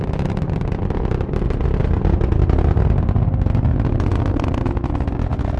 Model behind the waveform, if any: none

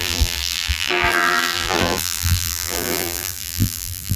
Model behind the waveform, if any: vocoder, BigVGAN v2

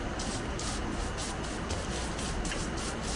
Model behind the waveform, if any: none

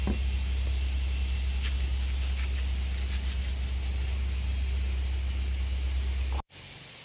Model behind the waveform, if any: none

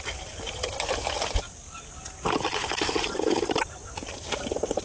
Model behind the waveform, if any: none